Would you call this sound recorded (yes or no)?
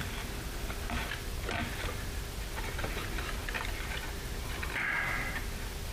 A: yes